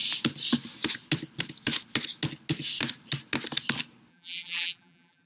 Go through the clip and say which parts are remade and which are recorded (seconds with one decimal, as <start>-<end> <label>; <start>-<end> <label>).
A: 0.0-4.1 recorded; 4.1-5.3 remade